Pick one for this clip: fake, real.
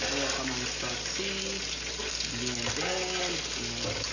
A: real